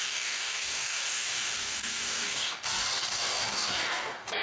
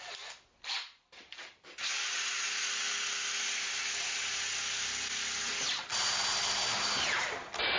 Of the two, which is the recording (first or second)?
second